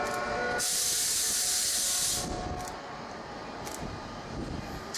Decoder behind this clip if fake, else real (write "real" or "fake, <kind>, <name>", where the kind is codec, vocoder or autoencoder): real